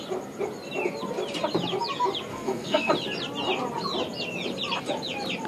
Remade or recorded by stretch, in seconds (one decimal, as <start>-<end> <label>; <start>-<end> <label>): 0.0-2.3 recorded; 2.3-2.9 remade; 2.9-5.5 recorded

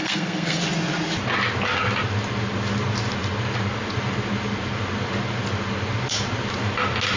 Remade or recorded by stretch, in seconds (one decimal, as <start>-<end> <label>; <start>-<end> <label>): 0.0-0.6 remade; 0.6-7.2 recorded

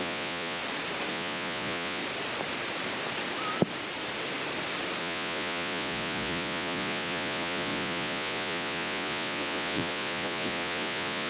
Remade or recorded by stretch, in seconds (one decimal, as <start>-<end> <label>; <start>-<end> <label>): 0.0-0.6 remade; 0.6-1.1 recorded; 1.1-2.0 remade; 2.0-5.0 recorded; 5.0-11.3 remade

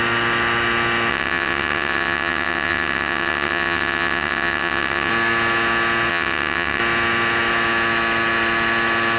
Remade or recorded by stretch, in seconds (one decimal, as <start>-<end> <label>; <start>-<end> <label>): 0.0-1.1 recorded; 1.1-5.1 remade; 5.1-6.1 recorded; 6.1-6.8 remade; 6.8-9.2 recorded

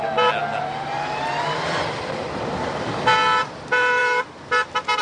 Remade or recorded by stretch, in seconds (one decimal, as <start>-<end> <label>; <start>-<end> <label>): 0.0-5.0 recorded